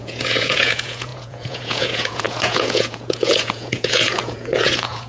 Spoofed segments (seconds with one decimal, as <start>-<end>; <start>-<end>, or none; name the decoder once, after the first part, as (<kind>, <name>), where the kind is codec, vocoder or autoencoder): 0.0-5.1 (vocoder, Vocos)